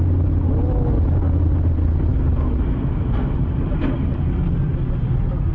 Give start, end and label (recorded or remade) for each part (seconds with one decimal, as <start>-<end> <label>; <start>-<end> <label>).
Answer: 0.0-5.5 recorded